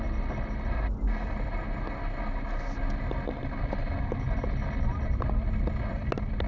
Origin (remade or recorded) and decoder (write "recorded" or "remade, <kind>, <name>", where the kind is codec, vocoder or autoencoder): recorded